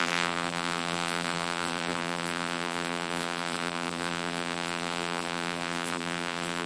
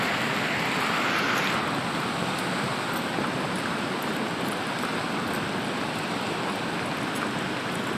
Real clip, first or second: second